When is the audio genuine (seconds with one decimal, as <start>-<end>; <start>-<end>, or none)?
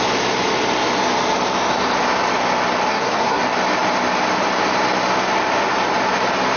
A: 0.0-2.9; 3.4-6.6